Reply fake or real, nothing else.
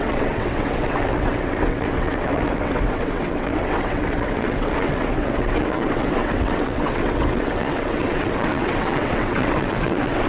fake